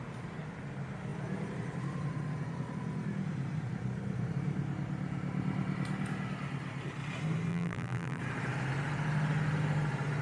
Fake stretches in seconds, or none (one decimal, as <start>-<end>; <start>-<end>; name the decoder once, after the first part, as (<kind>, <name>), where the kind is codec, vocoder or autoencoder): 7.5-8.2 (vocoder, BigVGAN v2)